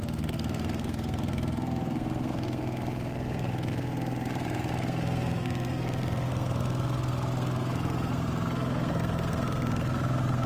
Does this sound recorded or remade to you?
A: remade